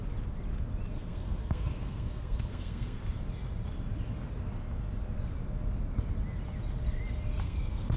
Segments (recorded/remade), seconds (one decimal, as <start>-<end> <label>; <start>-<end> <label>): 0.0-0.9 recorded; 0.9-3.0 remade; 3.0-7.4 recorded; 7.4-8.0 remade